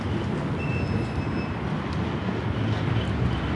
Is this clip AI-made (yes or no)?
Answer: no